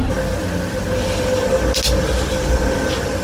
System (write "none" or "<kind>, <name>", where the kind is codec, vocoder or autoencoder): none